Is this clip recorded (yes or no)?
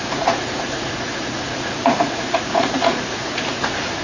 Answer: no